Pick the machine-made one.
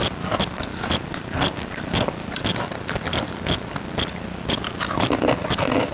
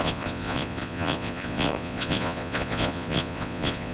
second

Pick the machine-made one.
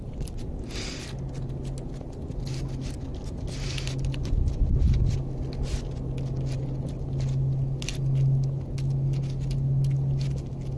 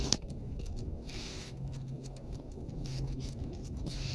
second